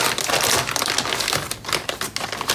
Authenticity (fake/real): real